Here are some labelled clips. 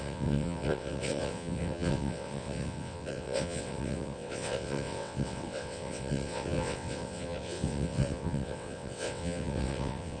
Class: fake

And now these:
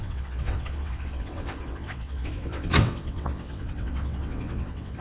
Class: fake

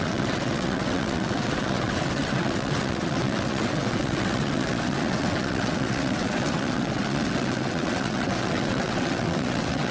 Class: fake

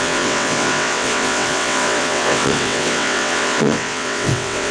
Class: fake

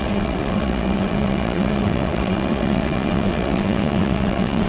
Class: fake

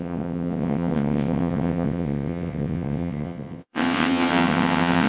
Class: fake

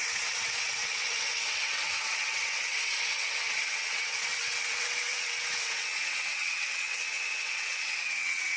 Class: fake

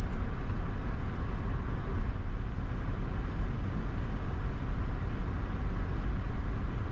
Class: real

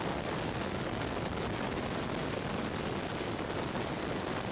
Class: real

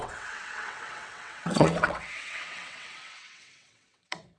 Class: fake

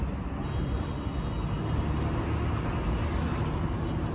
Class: real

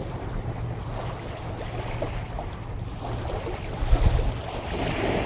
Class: real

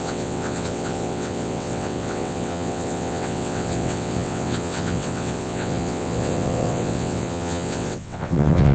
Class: fake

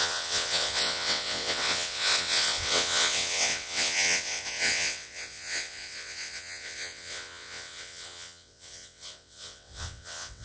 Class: fake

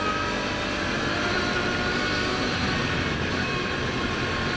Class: real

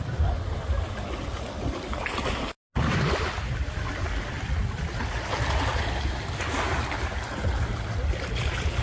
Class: real